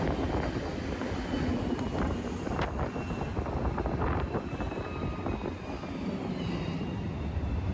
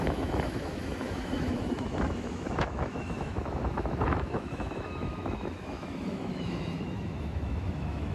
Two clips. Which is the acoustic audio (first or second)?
first